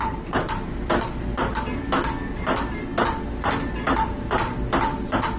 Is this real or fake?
real